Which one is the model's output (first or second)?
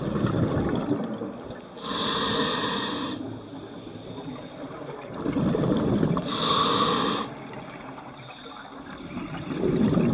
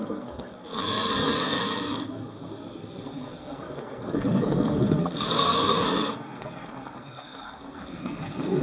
second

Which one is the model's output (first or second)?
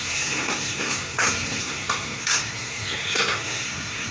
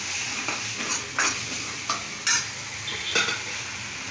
first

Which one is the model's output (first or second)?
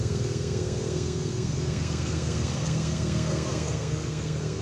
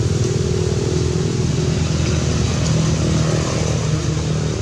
first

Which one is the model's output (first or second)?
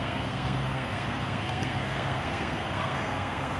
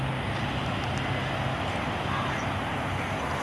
first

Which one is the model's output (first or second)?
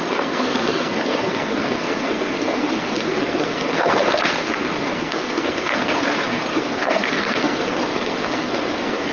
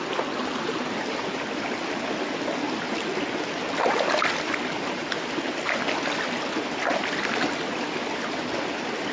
first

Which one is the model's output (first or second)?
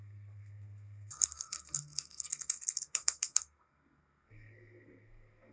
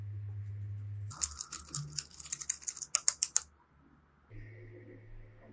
first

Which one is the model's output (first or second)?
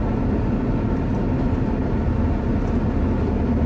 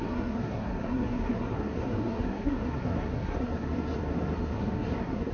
second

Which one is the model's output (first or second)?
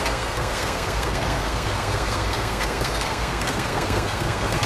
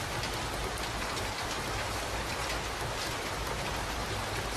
first